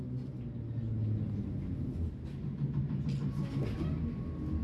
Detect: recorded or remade recorded